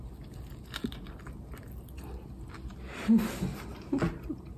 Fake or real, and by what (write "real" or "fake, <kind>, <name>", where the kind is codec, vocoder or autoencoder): real